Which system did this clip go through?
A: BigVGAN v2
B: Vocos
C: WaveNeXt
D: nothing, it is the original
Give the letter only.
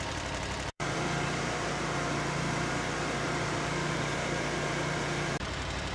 A